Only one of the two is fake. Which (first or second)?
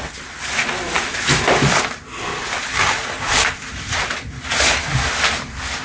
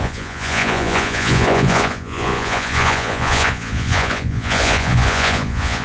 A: second